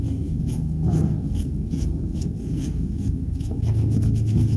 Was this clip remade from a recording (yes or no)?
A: yes